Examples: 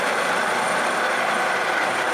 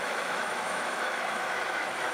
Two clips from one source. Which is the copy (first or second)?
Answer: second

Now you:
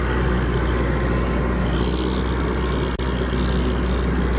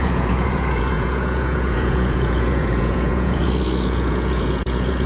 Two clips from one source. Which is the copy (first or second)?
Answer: second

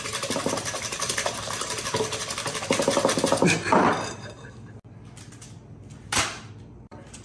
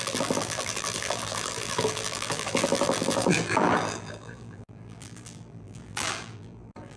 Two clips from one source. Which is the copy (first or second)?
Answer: second